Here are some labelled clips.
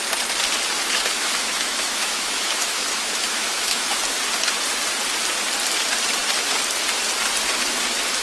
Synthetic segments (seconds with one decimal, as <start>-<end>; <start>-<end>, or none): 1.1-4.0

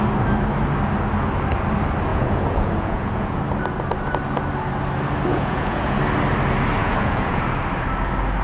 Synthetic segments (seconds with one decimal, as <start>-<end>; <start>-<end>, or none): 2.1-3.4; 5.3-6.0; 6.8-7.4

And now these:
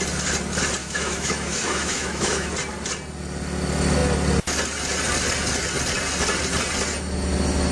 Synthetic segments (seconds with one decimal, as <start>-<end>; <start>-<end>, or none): 0.8-2.5

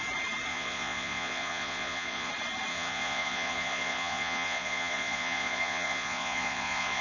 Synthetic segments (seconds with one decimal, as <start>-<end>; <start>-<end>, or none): 0.5-2.3; 2.7-7.0